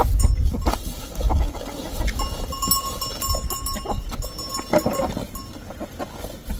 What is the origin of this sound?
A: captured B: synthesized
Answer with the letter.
A